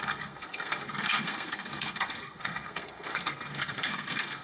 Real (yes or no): no